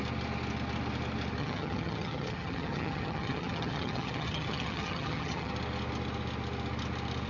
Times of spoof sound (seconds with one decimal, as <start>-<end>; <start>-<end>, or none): 1.4-5.5